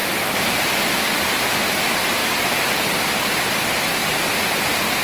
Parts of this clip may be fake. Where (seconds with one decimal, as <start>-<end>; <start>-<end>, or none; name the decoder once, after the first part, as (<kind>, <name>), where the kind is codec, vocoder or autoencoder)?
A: 2.2-3.3 (vocoder, BigVGAN v2)